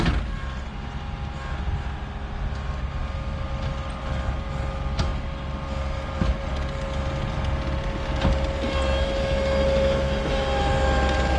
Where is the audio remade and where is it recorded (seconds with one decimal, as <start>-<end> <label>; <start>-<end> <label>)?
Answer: 0.0-11.4 recorded